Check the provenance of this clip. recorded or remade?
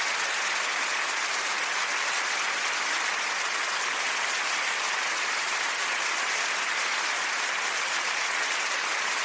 recorded